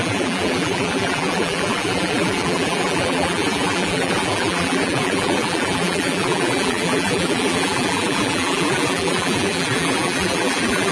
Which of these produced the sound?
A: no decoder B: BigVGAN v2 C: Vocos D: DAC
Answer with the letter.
B